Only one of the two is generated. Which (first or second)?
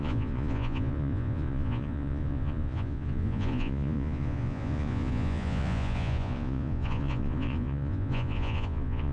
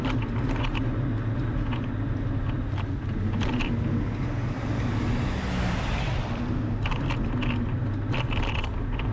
first